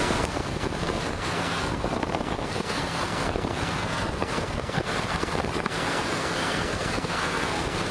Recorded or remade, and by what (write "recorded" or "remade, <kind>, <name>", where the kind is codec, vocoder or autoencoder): remade, codec, SNAC